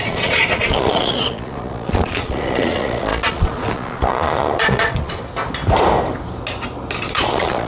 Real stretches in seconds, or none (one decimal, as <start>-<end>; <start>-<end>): 5.2-7.0